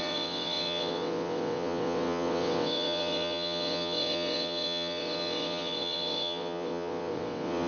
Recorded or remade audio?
remade